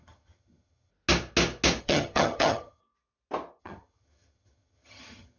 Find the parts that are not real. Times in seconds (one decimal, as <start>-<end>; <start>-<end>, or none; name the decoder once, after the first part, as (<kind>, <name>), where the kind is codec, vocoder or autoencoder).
0.0-0.9 (vocoder, HiFi-GAN); 1.8-2.8; 3.6-5.4